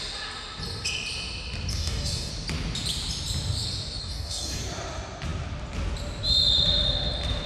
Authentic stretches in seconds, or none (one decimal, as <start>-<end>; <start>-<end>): 0.0-1.7; 2.3-4.0; 4.6-7.5